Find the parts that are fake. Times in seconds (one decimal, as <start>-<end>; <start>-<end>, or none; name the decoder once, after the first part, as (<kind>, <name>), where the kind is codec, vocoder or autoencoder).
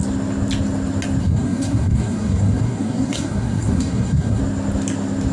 1.2-4.4 (codec, SNAC)